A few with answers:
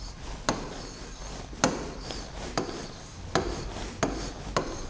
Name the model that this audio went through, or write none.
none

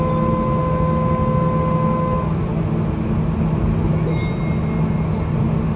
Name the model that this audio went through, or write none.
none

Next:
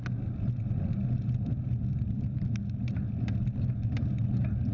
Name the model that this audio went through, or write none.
none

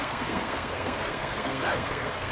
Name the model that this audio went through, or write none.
codec, SNAC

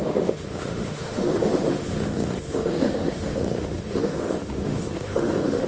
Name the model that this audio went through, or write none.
autoencoder, DAC-VAE